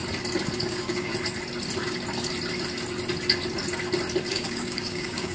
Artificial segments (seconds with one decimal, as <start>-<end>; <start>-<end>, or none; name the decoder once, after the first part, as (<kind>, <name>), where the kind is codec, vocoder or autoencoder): 0.7-1.1 (codec, DAC); 4.3-5.3